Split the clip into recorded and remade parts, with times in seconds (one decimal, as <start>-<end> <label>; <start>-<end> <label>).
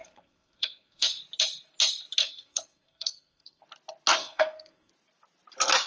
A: 0.0-1.2 remade; 1.2-2.2 recorded; 2.2-3.6 remade; 3.6-4.2 recorded; 4.2-4.9 remade; 4.9-5.9 recorded